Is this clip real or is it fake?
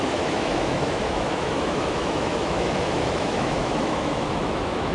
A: fake